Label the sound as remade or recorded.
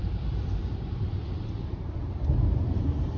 remade